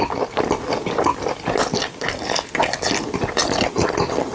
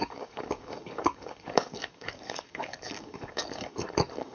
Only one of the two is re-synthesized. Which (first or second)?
second